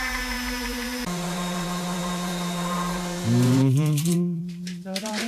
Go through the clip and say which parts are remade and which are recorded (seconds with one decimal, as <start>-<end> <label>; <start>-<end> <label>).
0.0-5.3 remade